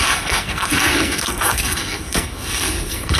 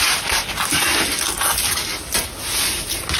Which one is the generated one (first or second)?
first